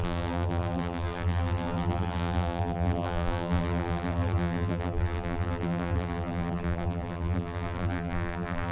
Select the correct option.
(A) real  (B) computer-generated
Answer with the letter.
B